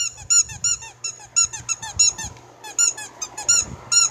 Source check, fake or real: real